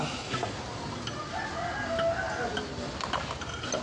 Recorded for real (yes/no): yes